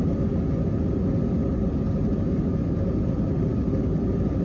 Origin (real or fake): real